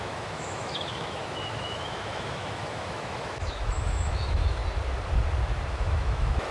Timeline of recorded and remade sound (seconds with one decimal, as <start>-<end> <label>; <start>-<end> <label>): 0.0-4.6 remade; 4.6-5.7 recorded; 5.7-6.5 remade